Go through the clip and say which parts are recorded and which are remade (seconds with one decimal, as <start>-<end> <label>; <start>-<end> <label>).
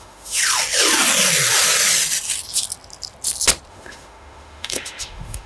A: 0.0-0.4 remade; 0.4-3.7 recorded; 3.7-5.5 remade